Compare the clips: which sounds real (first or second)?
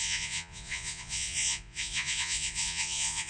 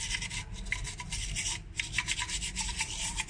second